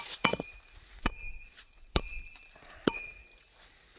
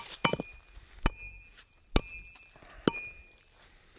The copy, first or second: first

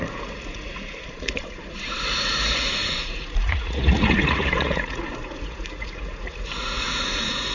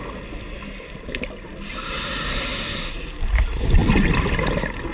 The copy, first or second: first